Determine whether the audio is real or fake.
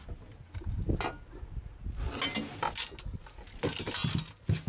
real